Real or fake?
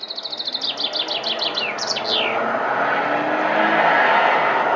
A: real